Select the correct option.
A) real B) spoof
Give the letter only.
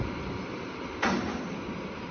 A